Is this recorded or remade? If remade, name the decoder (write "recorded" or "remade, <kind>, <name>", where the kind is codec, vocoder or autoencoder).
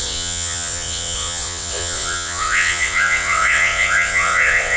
remade, vocoder, WaveNeXt